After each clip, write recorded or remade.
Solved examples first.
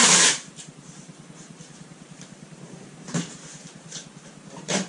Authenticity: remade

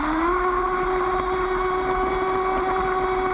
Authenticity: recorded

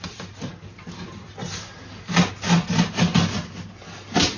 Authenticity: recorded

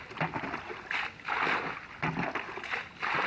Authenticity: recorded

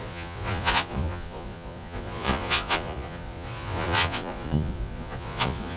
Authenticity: remade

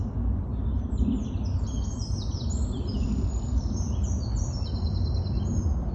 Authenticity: recorded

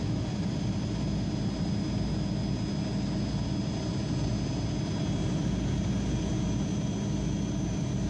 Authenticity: recorded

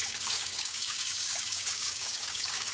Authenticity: remade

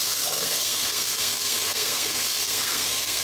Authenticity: remade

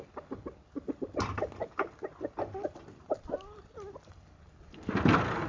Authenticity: recorded